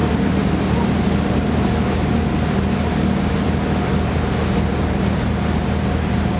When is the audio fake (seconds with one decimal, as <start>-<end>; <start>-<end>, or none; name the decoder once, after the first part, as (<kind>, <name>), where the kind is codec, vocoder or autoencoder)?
0.0-1.5 (vocoder, BigVGAN v2)